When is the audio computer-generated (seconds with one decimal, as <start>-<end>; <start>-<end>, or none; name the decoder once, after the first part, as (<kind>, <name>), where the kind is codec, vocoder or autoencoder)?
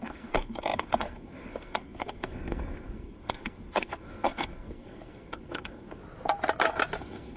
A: 0.0-6.0 (codec, SNAC); 7.0-7.4